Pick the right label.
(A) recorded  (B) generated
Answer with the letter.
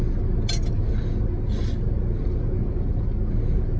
A